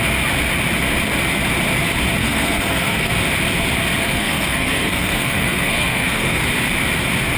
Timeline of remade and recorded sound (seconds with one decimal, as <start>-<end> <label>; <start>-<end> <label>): 0.0-2.2 recorded; 2.2-3.1 remade; 3.1-4.0 recorded; 4.0-6.4 remade; 6.4-7.4 recorded

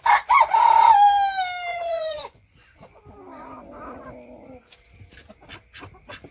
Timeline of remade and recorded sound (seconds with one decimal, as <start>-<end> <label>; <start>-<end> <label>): 0.0-1.7 recorded; 1.7-3.0 remade; 3.0-6.3 recorded

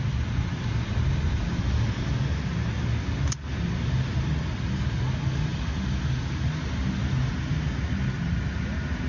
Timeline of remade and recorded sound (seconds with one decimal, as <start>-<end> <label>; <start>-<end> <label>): 0.0-9.1 recorded

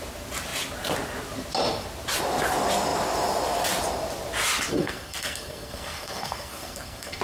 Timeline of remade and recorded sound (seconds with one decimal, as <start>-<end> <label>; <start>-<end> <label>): 0.0-4.7 recorded; 4.7-7.2 remade

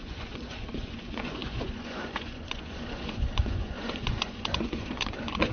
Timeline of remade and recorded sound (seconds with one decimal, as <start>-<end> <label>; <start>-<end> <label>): 0.0-5.5 remade

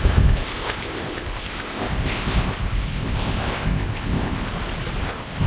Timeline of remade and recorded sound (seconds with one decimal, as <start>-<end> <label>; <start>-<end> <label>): 0.0-4.5 remade; 4.5-5.0 recorded; 5.0-5.5 remade

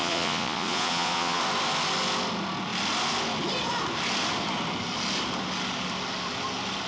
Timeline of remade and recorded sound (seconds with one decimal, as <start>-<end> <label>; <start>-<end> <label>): 0.0-1.4 remade; 1.4-6.9 recorded